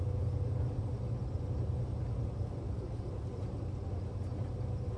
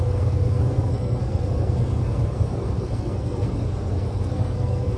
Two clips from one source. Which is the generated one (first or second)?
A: second